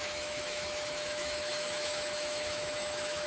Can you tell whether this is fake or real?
fake